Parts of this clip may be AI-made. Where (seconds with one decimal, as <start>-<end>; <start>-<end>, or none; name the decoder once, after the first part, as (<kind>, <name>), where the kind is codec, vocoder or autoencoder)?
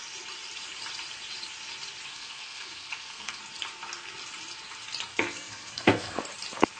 2.1-3.4 (codec, SNAC); 5.1-6.2